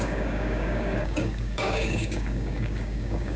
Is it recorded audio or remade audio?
remade